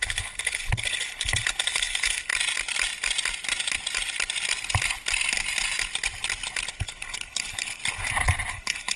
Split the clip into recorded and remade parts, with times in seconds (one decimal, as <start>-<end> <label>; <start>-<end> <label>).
0.0-2.3 remade; 2.3-6.7 recorded; 6.7-7.8 remade; 7.8-8.5 recorded; 8.5-9.0 remade